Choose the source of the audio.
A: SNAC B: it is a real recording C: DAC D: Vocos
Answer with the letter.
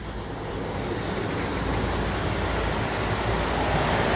B